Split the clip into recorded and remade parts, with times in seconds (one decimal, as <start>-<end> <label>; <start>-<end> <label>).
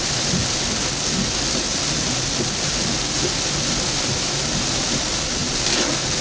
0.0-6.2 recorded